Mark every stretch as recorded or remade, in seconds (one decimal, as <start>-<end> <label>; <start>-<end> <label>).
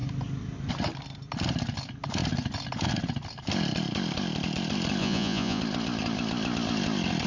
0.0-5.0 recorded; 5.0-5.6 remade; 5.6-7.3 recorded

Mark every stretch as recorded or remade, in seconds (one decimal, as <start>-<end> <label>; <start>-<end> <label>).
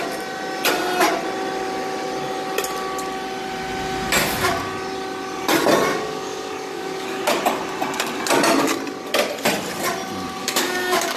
0.0-5.9 recorded; 5.9-7.2 remade; 7.2-10.4 recorded; 10.4-11.2 remade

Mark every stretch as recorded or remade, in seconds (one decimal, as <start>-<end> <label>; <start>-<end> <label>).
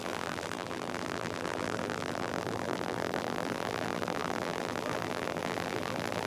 0.0-6.3 remade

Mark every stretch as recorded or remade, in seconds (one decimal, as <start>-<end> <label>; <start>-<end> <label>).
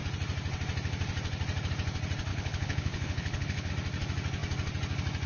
0.0-2.3 recorded; 2.3-3.7 remade; 3.7-5.3 recorded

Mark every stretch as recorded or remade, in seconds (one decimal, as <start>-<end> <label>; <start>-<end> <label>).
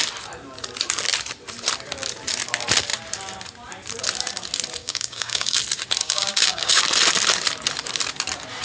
0.0-4.8 recorded; 4.8-5.6 remade; 5.6-6.0 recorded; 6.0-6.8 remade; 6.8-8.6 recorded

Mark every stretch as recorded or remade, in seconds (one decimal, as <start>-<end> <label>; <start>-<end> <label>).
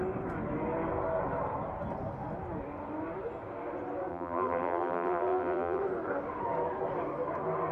0.0-4.1 recorded; 4.1-5.8 remade; 5.8-7.7 recorded